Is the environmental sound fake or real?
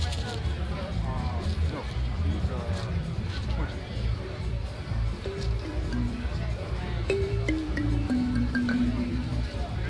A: fake